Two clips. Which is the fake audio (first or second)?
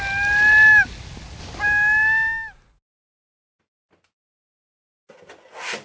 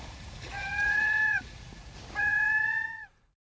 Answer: second